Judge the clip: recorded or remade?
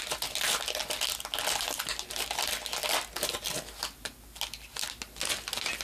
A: recorded